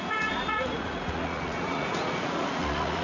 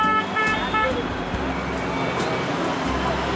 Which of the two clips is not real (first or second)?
first